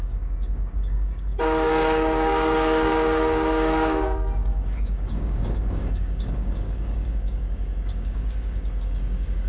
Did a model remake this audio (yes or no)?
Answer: yes